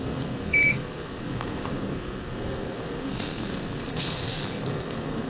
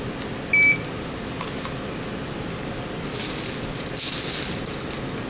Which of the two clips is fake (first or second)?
first